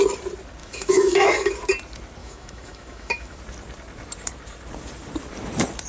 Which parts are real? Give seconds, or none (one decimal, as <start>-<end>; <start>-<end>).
0.0-0.6; 1.5-2.2; 3.4-5.9